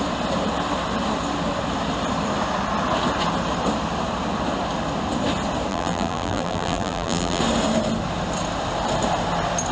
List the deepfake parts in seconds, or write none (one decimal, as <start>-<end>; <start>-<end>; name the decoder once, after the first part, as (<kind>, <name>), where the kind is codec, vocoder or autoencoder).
5.7-7.4 (vocoder, BigVGAN v2)